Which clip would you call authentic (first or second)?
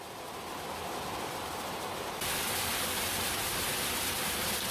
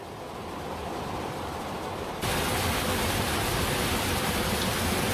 first